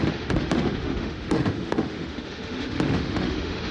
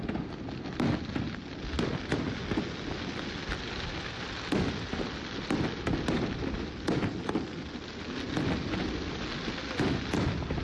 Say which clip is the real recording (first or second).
second